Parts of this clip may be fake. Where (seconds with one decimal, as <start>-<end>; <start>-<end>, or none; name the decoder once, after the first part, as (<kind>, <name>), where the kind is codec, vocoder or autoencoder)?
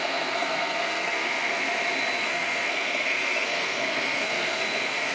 0.0-1.6 (codec, SNAC); 2.2-5.1